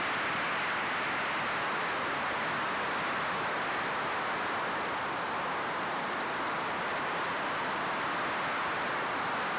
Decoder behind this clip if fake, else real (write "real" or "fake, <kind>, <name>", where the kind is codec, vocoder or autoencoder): fake, vocoder, BigVGAN v2